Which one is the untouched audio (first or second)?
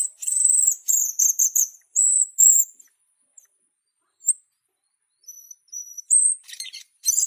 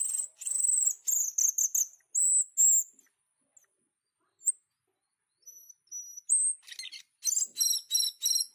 second